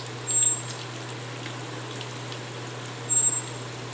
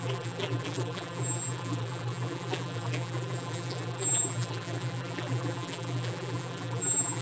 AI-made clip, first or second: second